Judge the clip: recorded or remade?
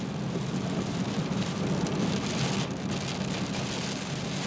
recorded